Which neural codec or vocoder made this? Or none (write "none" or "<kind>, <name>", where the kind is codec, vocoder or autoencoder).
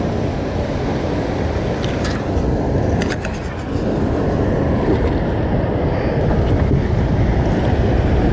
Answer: none